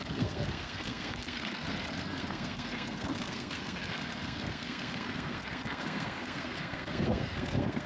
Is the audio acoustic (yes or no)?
no